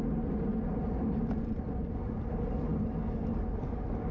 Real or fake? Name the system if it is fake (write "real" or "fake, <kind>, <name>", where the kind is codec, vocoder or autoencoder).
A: real